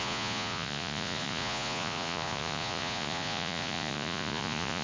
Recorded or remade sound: remade